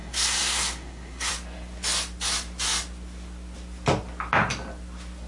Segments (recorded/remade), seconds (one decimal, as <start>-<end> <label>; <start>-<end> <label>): 0.0-1.3 remade; 1.3-5.3 recorded